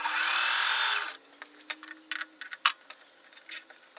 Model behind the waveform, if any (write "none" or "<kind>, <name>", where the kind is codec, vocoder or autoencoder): none